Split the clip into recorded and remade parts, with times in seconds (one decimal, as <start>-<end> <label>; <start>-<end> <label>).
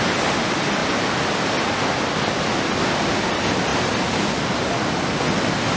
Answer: 0.0-5.8 recorded